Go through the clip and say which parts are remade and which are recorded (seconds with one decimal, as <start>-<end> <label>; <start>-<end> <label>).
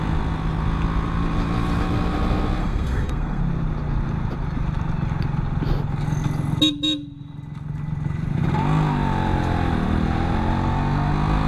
0.0-2.6 recorded; 2.6-3.4 remade; 3.4-11.5 recorded